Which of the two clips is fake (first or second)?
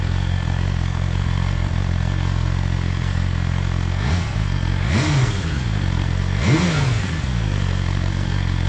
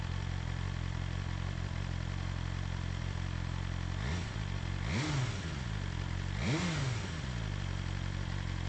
first